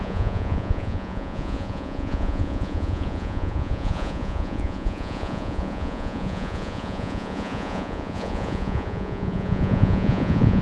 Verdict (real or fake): fake